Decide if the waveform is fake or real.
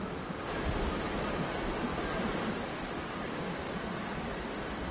real